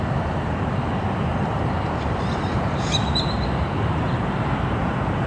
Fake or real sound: fake